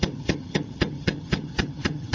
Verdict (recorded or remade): remade